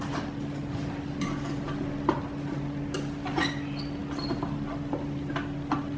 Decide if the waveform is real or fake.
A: real